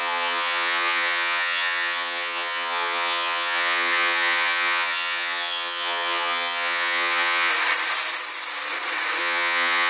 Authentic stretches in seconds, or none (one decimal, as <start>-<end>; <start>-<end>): 7.5-9.2